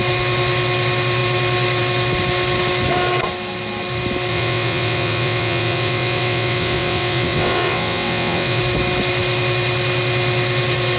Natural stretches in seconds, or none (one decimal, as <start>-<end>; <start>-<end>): 0.0-4.3; 8.6-11.0